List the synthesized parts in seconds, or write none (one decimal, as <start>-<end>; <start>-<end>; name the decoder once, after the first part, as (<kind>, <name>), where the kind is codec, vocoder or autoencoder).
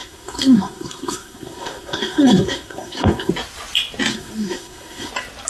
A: 0.0-3.3 (codec, SNAC); 4.1-5.1